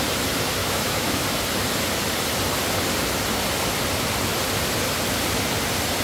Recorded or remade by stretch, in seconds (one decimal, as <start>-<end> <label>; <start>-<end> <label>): 0.0-0.6 recorded; 0.6-1.2 remade; 1.2-6.0 recorded